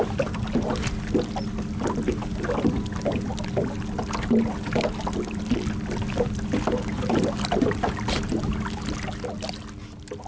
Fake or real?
real